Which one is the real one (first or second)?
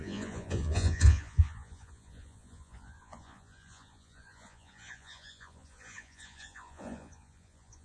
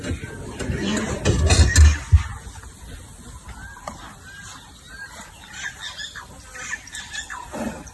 second